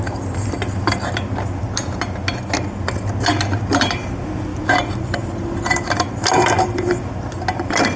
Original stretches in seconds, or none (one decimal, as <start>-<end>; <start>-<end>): 0.0-4.5; 5.4-8.0